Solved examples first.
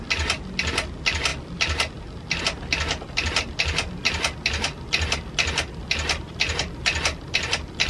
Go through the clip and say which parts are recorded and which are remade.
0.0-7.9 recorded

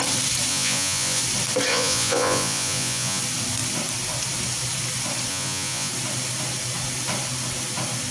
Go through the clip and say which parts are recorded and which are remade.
0.0-0.5 recorded; 0.5-1.2 remade; 1.2-1.7 recorded; 1.7-3.2 remade; 3.2-5.3 recorded; 5.3-5.9 remade; 5.9-8.1 recorded

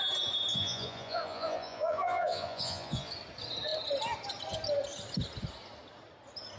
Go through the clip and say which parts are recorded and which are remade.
0.0-0.5 recorded; 0.5-3.1 remade; 3.1-6.6 recorded

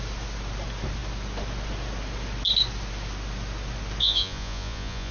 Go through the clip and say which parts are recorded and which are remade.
0.0-4.0 recorded; 4.0-5.1 remade